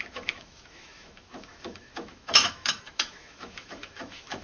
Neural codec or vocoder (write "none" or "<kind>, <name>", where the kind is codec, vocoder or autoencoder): autoencoder, DAC-VAE